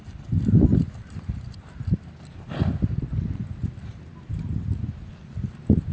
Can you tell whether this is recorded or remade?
recorded